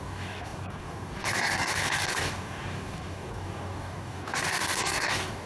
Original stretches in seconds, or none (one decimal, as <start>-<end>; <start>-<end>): none